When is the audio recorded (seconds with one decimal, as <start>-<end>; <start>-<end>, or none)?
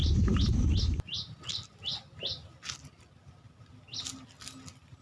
0.0-5.0